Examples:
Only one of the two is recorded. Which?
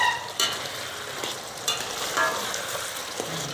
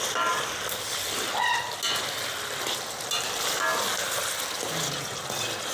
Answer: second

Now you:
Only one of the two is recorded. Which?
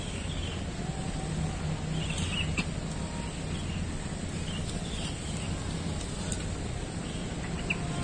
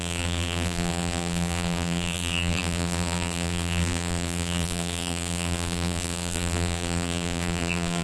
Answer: first